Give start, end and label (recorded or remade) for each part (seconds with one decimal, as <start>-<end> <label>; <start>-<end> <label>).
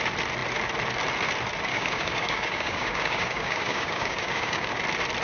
0.0-1.7 recorded; 1.7-4.8 remade; 4.8-5.2 recorded